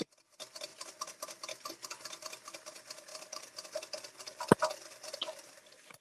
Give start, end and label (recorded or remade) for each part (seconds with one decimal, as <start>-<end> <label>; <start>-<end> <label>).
0.0-6.0 recorded